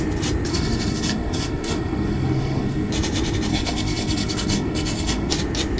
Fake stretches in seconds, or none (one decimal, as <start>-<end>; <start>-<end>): 0.5-2.9; 3.5-5.3